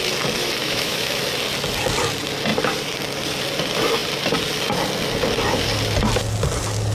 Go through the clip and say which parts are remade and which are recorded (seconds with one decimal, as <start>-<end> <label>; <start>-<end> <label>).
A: 0.0-0.6 recorded; 0.6-1.2 remade; 1.2-6.9 recorded